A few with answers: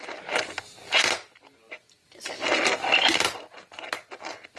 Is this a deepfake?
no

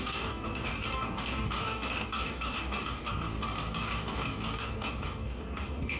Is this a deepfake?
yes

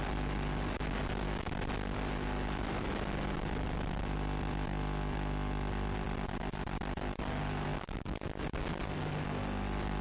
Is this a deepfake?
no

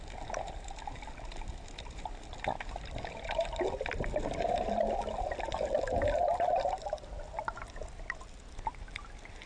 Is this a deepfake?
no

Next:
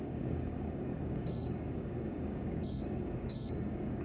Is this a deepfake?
yes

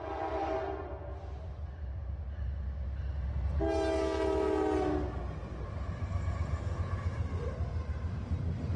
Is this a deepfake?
no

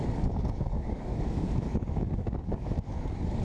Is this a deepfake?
yes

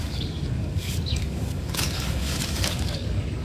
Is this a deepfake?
yes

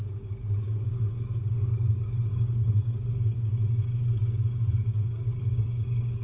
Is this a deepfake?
yes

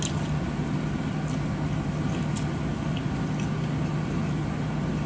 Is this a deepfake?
no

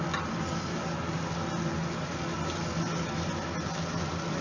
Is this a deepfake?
no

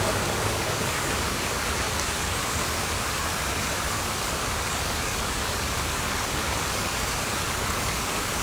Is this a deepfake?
yes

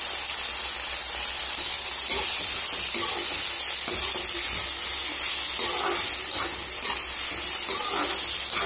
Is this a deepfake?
no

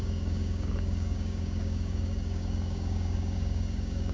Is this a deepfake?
yes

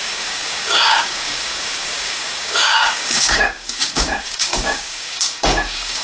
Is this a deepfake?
yes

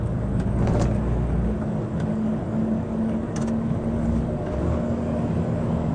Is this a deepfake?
yes